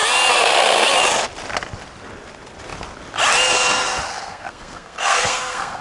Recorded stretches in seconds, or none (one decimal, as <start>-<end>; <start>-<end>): 0.0-4.1